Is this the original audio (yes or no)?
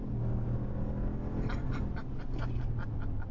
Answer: yes